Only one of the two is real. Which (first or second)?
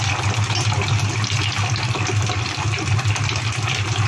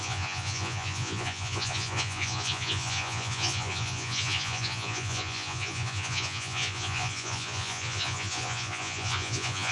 first